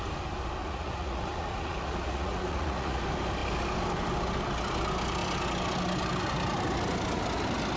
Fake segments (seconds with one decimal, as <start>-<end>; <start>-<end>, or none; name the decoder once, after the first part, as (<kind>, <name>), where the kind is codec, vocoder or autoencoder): 0.6-3.0 (vocoder, Vocos)